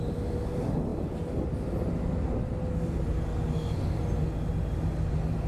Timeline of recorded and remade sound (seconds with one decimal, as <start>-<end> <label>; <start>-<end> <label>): 0.0-5.5 recorded